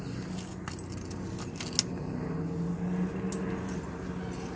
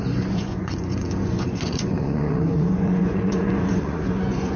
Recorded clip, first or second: first